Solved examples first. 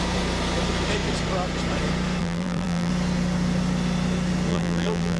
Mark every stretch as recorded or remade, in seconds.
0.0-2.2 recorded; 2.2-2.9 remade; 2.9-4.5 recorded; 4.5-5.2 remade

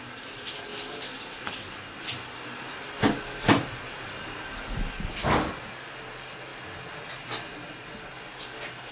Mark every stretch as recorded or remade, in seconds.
0.0-8.9 recorded

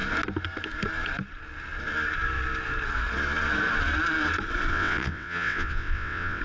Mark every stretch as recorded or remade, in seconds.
0.0-4.7 recorded; 4.7-6.4 remade